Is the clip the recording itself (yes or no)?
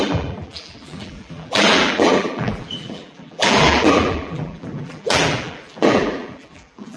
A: no